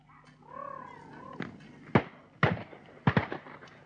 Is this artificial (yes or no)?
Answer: no